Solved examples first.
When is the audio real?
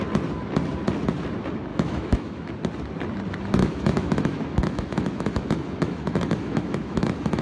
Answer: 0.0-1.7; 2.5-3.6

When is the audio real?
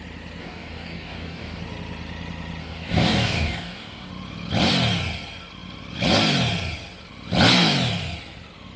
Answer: 0.0-0.4; 1.6-2.6; 4.1-8.8